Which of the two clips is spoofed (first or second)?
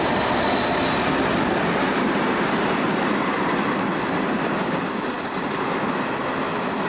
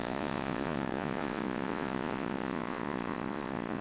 second